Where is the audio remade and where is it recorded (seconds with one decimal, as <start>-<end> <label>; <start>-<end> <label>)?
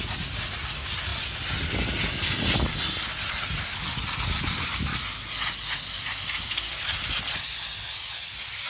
0.0-8.7 recorded